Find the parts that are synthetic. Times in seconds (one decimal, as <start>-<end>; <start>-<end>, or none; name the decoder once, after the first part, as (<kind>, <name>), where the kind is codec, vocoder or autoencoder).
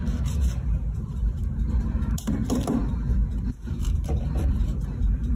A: 0.0-2.8 (vocoder, BigVGAN v2); 3.5-5.4